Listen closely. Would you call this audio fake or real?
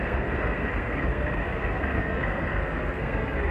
fake